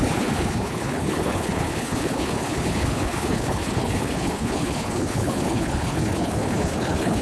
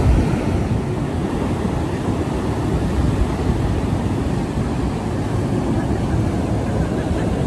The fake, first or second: first